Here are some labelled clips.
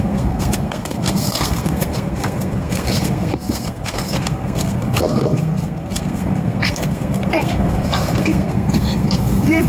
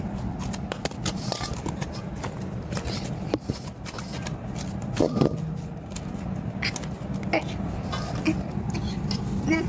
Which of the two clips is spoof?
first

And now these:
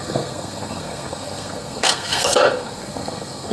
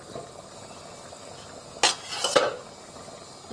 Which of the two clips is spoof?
first